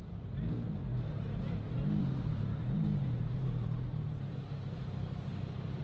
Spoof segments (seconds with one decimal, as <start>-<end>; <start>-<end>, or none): 2.0-4.4